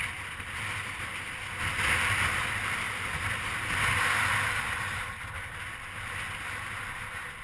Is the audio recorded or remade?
recorded